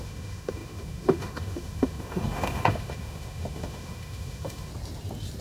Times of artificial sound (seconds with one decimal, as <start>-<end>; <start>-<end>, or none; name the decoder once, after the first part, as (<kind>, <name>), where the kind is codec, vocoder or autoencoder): 0.0-4.7 (autoencoder, DAC-VAE)